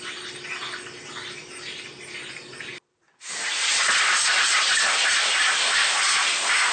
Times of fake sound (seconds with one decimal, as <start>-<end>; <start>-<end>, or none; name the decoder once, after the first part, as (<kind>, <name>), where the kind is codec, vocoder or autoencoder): none